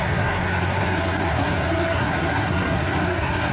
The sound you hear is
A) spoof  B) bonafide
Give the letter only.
A